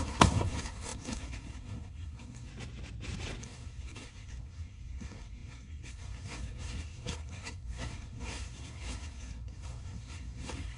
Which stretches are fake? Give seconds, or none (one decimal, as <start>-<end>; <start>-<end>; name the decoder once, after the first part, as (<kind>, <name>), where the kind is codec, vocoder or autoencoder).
0.0-2.5 (codec, SNAC); 3.4-10.8